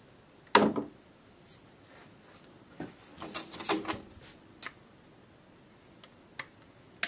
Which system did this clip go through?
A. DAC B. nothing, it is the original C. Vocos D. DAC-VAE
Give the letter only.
B